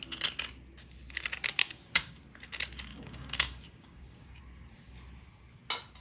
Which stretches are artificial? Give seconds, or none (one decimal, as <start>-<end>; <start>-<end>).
1.6-2.2; 2.9-4.4